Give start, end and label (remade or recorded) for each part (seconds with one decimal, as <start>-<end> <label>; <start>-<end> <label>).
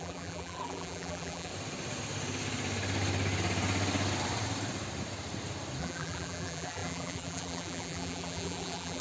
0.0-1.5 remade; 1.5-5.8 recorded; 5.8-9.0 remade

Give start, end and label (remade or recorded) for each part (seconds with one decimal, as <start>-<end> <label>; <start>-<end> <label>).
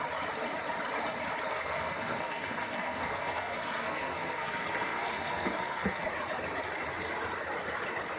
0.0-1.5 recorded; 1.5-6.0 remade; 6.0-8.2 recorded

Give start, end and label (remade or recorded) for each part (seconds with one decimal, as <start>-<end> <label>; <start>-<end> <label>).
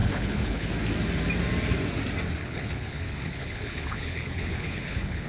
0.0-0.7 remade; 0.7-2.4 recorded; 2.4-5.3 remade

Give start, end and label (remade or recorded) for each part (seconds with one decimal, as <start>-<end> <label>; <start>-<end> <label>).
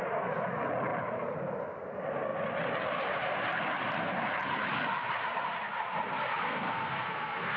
0.0-6.4 recorded; 6.4-7.6 remade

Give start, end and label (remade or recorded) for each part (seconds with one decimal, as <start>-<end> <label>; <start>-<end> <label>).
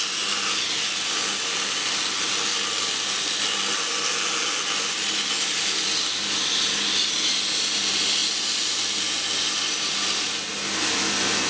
0.0-11.5 recorded